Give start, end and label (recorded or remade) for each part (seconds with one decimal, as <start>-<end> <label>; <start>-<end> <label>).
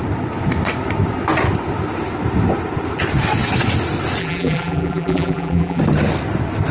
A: 0.0-4.2 recorded; 4.2-5.8 remade; 5.8-6.7 recorded